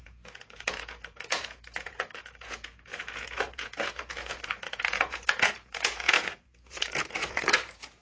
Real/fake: fake